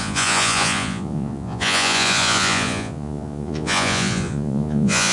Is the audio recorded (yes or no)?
no